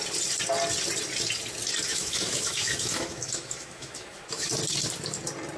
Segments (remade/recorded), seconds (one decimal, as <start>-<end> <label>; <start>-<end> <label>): 0.0-1.9 recorded; 1.9-4.5 remade; 4.5-5.6 recorded